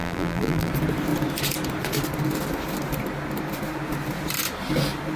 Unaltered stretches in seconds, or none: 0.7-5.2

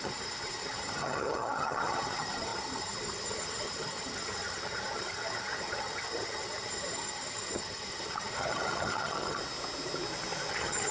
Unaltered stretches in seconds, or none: 9.4-10.5

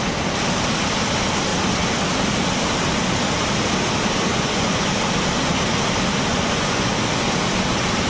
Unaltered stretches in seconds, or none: 0.0-4.3; 4.9-6.3; 6.9-8.1

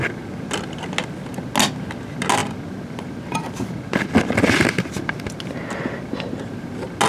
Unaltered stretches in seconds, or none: 0.0-7.1

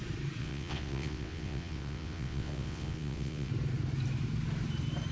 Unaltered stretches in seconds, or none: 0.0-0.4; 3.5-5.1

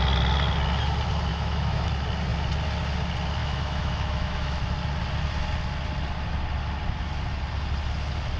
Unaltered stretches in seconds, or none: 0.0-1.3; 1.9-3.4; 4.6-8.4

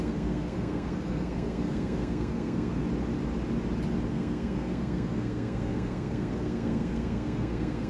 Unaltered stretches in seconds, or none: 2.8-4.1